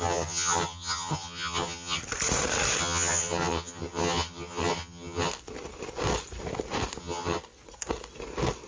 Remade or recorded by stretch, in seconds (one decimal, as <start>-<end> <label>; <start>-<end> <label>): 0.0-2.0 remade; 2.0-2.8 recorded; 2.8-5.3 remade; 5.3-7.0 recorded; 7.0-7.4 remade; 7.4-8.7 recorded